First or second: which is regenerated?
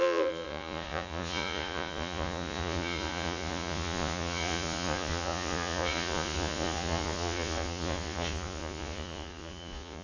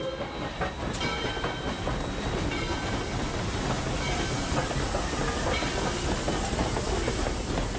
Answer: first